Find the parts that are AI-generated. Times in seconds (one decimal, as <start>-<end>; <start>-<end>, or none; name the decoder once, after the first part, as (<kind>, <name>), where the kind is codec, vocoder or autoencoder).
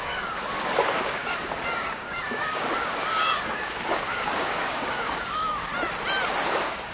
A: 0.0-5.7 (codec, DAC); 6.5-6.9